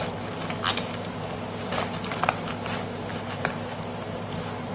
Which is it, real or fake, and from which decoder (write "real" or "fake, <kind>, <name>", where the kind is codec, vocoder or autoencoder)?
real